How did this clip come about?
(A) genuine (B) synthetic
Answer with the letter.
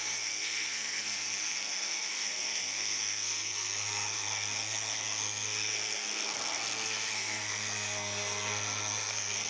B